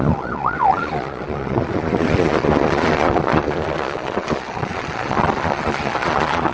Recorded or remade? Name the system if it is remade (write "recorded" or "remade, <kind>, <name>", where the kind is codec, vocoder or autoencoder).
remade, vocoder, Vocos